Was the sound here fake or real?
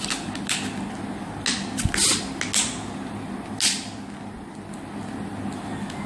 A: real